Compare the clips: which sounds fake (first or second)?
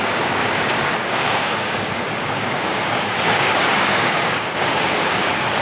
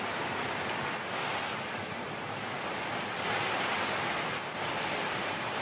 first